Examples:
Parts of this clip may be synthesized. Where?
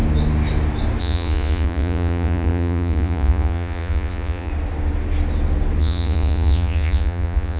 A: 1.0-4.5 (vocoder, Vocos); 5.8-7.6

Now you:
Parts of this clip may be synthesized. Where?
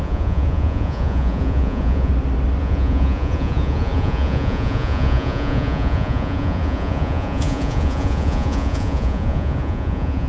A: 0.0-2.1 (vocoder, Vocos); 2.6-10.3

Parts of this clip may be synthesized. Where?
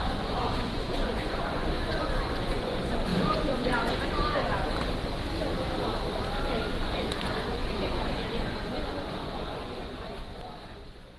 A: 0.0-4.6 (vocoder, Vocos); 6.7-11.2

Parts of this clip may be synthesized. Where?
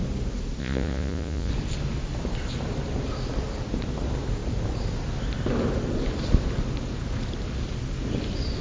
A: 0.6-1.5 (vocoder, Vocos)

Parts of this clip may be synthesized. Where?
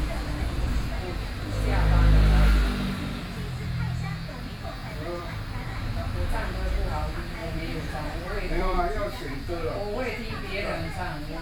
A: 4.8-5.5 (vocoder, BigVGAN v2); 7.4-8.8